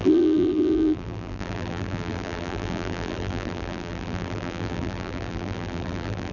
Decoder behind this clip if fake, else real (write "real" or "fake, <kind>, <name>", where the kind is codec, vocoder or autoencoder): fake, vocoder, BigVGAN v2